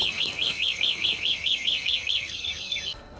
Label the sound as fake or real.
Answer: fake